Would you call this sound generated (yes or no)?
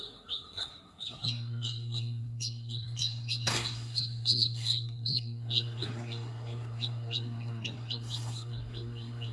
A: yes